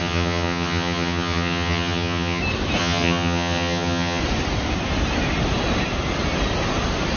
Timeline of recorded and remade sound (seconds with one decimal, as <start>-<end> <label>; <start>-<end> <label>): 0.0-2.4 remade; 2.4-2.8 recorded; 2.8-4.2 remade; 4.2-7.2 recorded